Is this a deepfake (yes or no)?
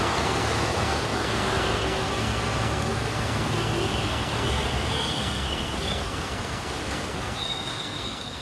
yes